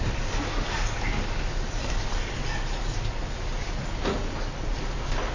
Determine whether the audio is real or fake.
real